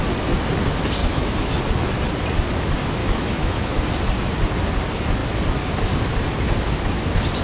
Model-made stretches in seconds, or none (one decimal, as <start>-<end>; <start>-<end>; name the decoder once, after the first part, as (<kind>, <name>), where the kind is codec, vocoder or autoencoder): 1.0-1.6 (autoencoder, DAC-VAE); 3.0-3.8